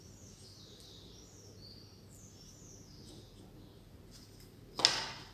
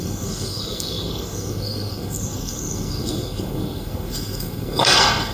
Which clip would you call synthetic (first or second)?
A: second